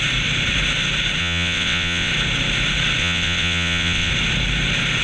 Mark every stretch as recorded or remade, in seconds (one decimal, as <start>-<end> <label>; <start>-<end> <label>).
0.0-1.2 recorded; 1.2-2.1 remade; 2.1-3.0 recorded; 3.0-4.1 remade; 4.1-5.0 recorded